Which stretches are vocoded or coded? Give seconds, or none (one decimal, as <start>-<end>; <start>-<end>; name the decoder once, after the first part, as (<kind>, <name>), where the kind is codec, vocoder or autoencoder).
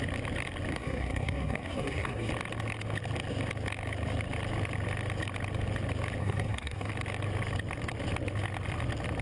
0.7-2.3 (codec, SNAC); 6.2-6.9